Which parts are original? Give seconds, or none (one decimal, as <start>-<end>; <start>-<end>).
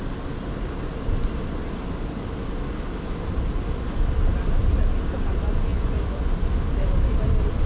0.0-5.7; 6.3-7.7